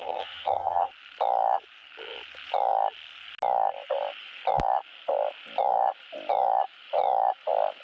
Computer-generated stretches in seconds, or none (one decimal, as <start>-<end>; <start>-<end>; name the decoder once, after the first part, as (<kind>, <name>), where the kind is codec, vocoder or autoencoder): 0.0-0.9 (vocoder, HiFi-GAN)